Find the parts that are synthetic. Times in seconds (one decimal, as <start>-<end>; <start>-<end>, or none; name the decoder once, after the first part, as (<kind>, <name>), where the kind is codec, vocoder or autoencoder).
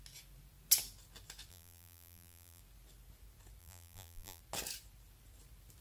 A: 1.5-2.6 (vocoder, BigVGAN v2); 3.6-4.4